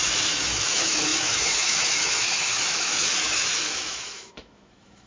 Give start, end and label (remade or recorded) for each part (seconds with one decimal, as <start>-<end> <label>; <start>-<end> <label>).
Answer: 0.0-5.1 remade

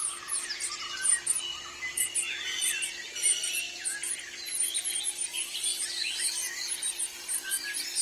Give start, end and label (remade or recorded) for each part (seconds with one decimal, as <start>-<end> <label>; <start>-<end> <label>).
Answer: 0.0-8.0 recorded

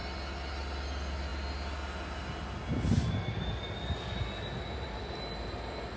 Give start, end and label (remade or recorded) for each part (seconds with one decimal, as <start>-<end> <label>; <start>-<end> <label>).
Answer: 0.0-6.0 recorded

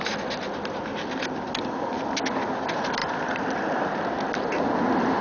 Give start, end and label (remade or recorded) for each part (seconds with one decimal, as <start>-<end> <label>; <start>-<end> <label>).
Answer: 0.0-5.2 recorded

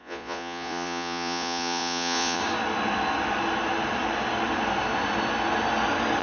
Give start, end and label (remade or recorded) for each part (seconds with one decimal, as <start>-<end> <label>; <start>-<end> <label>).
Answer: 0.0-2.4 remade; 2.4-6.2 recorded

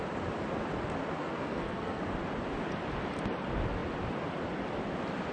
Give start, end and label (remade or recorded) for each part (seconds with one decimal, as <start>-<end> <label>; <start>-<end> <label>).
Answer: 0.0-1.2 recorded; 1.2-2.0 remade; 2.0-5.3 recorded

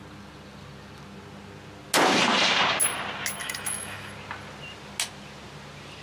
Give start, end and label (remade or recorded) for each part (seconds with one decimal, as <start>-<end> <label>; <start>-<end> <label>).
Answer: 0.0-3.4 recorded; 3.4-4.1 remade; 4.1-6.0 recorded